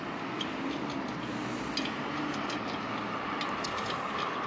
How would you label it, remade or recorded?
recorded